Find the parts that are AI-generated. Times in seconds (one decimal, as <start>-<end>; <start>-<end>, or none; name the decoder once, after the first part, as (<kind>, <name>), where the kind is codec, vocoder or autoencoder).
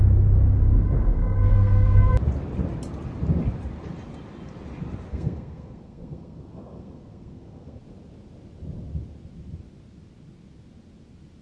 1.1-2.1 (codec, SNAC); 5.1-7.8